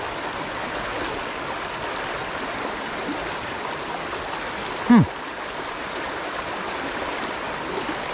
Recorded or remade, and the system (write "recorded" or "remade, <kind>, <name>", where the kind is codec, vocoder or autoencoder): recorded